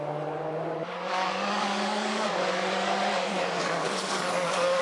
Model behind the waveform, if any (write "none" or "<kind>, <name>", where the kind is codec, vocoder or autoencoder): codec, DAC